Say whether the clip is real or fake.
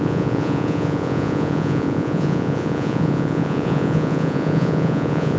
fake